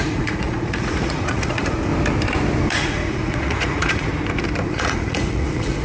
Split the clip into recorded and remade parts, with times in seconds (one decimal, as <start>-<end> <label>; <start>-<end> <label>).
0.0-1.9 remade; 1.9-2.7 recorded; 2.7-4.1 remade; 4.1-4.7 recorded; 4.7-5.8 remade